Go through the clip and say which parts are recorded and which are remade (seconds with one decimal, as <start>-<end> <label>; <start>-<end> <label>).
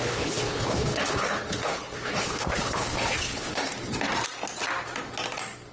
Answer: 0.0-3.7 remade; 3.7-5.7 recorded